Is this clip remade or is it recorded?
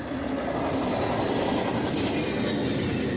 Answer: recorded